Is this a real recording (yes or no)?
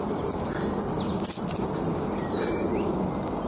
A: yes